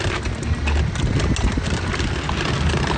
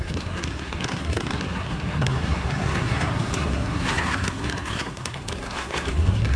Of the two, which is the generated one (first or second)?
second